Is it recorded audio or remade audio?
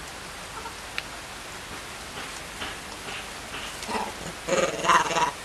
recorded